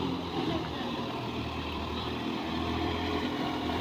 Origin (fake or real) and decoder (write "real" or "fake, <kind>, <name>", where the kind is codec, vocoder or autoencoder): fake, vocoder, BigVGAN v2